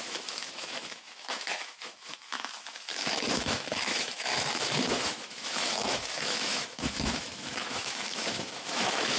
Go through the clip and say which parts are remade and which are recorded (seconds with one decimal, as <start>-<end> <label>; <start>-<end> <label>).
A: 0.0-9.2 remade